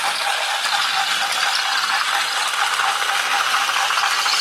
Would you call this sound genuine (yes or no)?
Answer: yes